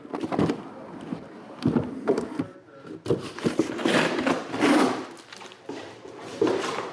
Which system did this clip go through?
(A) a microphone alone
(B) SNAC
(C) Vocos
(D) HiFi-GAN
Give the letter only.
A